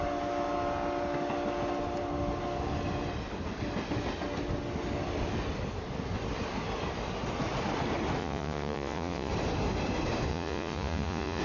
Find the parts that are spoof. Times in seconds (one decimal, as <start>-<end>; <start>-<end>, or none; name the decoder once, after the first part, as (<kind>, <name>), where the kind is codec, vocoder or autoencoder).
8.2-9.3 (vocoder, Vocos); 10.3-11.4